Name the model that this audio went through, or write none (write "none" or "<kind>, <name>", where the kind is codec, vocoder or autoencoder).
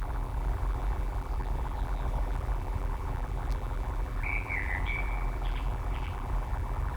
vocoder, BigVGAN v2